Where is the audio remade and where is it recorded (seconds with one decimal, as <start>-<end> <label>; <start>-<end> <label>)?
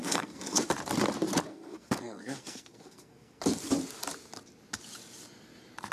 0.0-0.6 remade; 0.6-1.5 recorded; 1.5-3.4 remade; 3.4-5.9 recorded